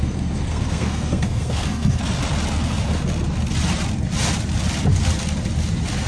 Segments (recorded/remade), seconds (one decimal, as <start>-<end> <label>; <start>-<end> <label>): 0.0-2.0 remade; 2.0-6.1 recorded